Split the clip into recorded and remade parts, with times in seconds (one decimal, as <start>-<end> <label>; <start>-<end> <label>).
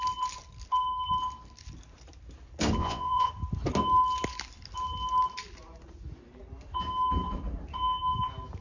0.0-2.8 recorded; 2.8-3.3 remade; 3.3-8.6 recorded